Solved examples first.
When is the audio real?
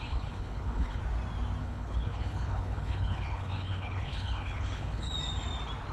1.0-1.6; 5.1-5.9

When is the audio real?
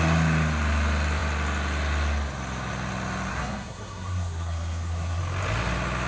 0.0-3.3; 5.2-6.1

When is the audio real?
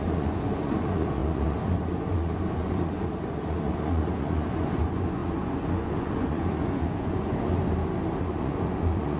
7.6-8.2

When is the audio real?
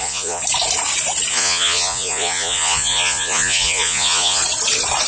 0.4-1.3; 4.4-5.1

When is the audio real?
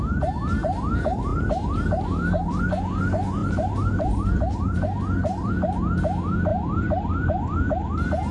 0.0-1.3; 2.6-3.4; 5.5-6.5; 7.1-8.3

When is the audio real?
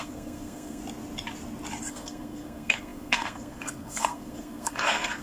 0.8-1.9